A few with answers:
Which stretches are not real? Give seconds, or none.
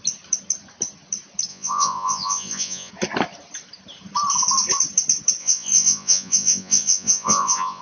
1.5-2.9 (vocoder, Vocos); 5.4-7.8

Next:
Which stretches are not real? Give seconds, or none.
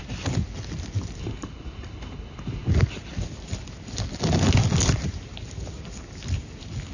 1.2-2.7 (codec, HILCodec)